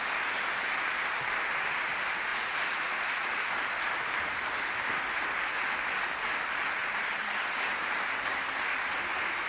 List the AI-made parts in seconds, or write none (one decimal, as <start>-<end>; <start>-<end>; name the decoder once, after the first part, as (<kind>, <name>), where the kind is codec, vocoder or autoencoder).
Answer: 2.3-3.5 (vocoder, Vocos)